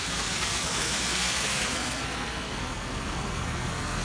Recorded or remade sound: remade